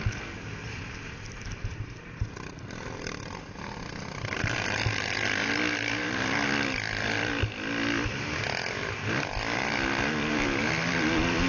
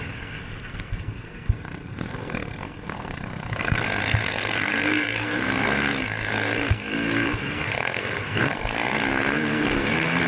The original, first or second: first